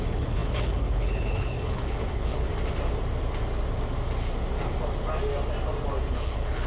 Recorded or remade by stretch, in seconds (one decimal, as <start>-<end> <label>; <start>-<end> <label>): 0.0-2.5 remade; 2.5-6.1 recorded; 6.1-6.7 remade